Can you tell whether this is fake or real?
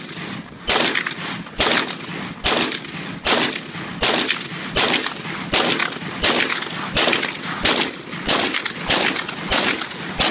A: real